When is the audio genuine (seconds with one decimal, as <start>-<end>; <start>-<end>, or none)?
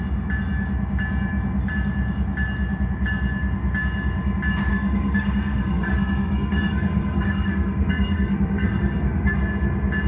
0.0-4.7; 9.4-10.1